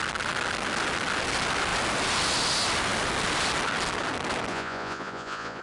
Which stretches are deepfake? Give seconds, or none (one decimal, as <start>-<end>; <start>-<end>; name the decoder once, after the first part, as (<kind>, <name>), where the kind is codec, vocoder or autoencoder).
4.5-5.6 (vocoder, Vocos)